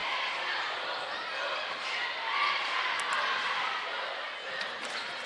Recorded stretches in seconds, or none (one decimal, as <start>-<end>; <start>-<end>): 0.0-5.3